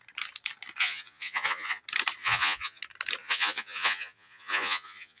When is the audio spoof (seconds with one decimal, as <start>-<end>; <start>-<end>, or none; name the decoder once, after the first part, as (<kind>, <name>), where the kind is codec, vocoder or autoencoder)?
0.8-1.8 (vocoder, Vocos); 2.2-2.8; 3.2-5.2